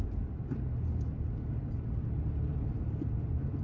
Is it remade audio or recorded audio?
recorded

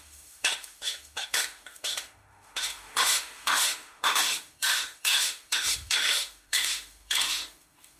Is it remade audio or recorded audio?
remade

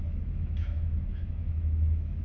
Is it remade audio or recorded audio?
remade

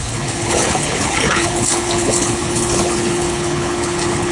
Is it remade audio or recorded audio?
remade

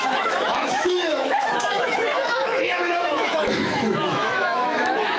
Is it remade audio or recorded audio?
remade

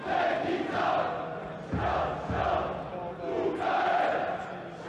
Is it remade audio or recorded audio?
recorded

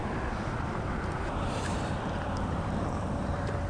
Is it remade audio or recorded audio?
remade